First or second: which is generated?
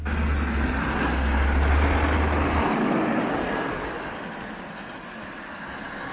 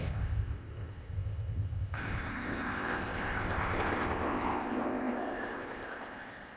second